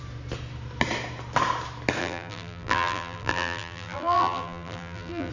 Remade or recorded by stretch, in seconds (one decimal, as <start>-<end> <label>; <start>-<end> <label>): 0.0-2.0 recorded; 2.0-5.3 remade